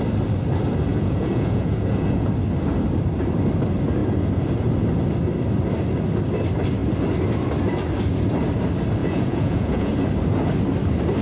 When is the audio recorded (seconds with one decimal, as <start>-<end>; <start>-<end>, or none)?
0.0-0.9; 2.3-9.0; 9.9-11.2